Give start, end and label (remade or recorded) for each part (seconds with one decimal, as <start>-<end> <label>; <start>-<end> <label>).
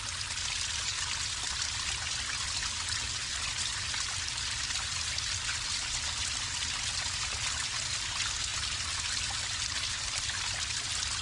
0.0-11.2 recorded